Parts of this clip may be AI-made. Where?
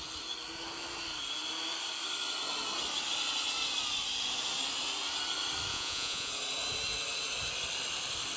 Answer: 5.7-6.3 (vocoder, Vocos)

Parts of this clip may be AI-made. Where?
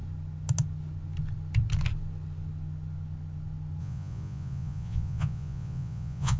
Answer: 3.8-6.4 (vocoder, Vocos)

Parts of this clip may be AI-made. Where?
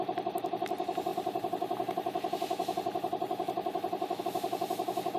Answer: none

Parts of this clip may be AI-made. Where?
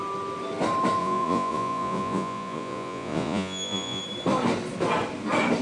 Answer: 1.0-4.0 (vocoder, Vocos)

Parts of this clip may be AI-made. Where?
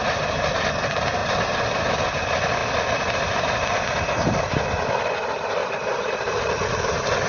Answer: 5.6-6.8 (vocoder, Vocos)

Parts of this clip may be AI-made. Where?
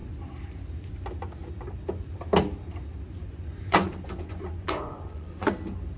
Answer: 3.2-5.5 (vocoder, Vocos)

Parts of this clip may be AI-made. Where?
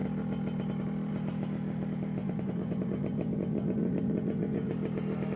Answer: 2.2-4.7 (vocoder, Vocos)